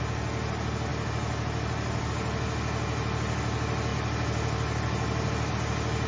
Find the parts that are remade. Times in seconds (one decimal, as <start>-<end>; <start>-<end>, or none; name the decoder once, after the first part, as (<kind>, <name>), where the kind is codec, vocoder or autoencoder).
none